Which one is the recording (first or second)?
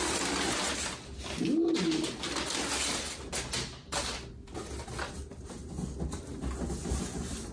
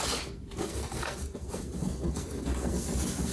first